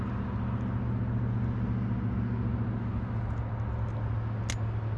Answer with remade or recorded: recorded